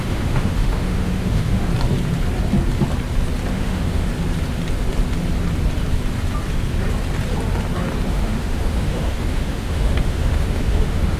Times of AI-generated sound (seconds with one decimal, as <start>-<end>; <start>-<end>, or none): 0.0-1.7; 3.5-4.1; 8.1-11.2